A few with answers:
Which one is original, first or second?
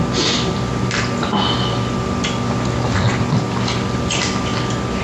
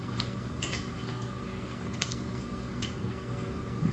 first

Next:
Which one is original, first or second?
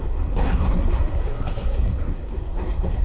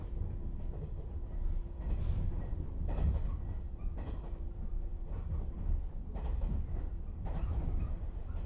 second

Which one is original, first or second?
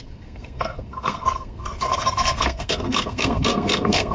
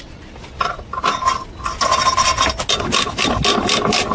second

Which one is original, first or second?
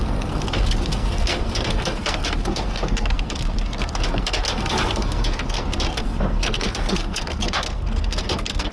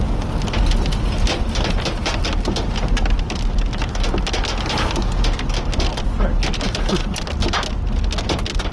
second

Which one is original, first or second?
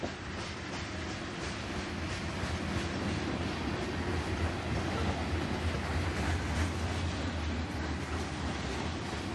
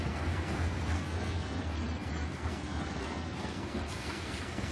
first